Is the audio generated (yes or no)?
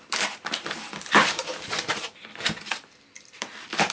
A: yes